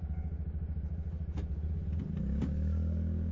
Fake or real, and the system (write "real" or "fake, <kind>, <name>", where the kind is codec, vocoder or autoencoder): real